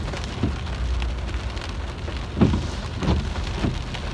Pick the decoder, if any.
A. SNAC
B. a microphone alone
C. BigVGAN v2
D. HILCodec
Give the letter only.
B